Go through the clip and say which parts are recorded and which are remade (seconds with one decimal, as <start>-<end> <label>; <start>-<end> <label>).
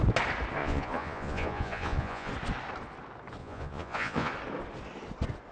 0.0-0.6 recorded; 0.6-2.3 remade; 2.3-3.4 recorded; 3.4-4.3 remade; 4.3-5.5 recorded